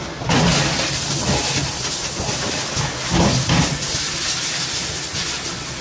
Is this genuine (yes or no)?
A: yes